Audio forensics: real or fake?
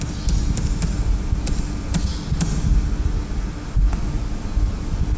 real